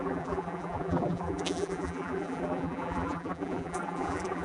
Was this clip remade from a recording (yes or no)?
yes